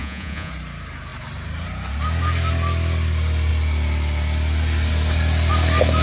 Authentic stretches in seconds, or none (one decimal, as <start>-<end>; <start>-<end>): 0.5-6.0